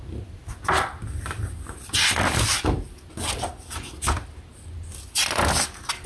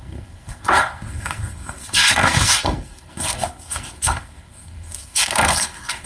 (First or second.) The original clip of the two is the first